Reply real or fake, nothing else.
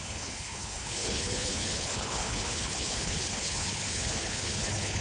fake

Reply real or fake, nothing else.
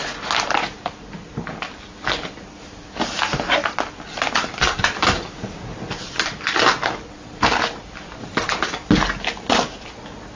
real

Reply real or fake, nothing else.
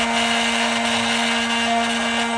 real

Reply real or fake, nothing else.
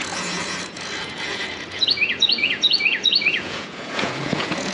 fake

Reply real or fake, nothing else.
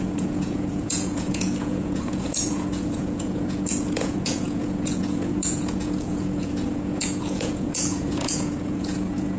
fake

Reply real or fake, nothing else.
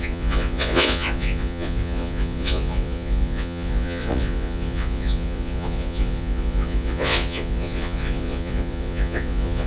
fake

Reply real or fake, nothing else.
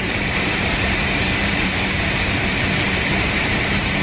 fake